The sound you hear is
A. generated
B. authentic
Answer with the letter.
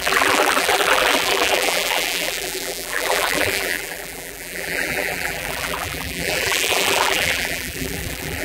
A